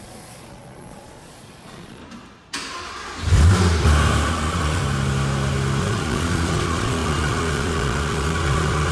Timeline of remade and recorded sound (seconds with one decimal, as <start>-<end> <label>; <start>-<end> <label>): 0.0-2.0 remade; 2.0-4.3 recorded; 4.3-4.8 remade; 4.8-5.8 recorded; 5.8-8.9 remade